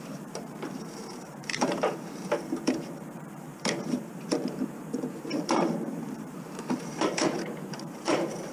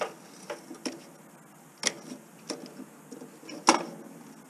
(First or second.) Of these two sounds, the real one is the second